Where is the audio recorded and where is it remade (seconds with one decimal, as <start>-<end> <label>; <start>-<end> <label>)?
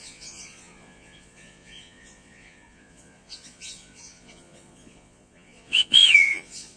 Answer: 0.0-6.8 remade